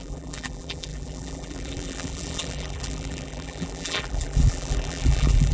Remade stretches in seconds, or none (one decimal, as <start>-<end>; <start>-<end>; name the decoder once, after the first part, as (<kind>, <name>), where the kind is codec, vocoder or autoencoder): 0.0-5.5 (vocoder, BigVGAN v2)